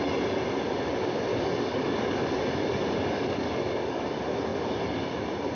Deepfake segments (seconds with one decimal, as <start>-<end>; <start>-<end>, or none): 1.3-4.1

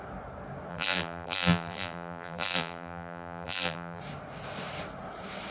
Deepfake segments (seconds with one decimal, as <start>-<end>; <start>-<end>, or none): 0.7-4.0

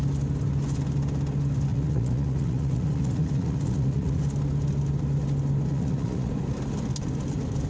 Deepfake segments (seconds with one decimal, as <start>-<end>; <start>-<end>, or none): 1.7-4.2; 5.7-6.3

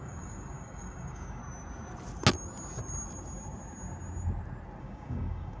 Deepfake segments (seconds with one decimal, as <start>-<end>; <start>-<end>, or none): 0.0-1.4; 4.8-5.6

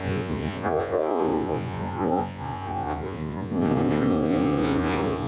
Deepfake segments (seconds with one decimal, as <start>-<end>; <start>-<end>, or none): 0.0-5.3